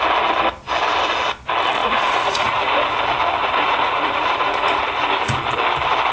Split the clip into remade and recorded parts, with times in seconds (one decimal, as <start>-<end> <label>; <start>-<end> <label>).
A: 0.0-1.8 recorded; 1.8-2.7 remade; 2.7-3.4 recorded; 3.4-4.8 remade; 4.8-6.1 recorded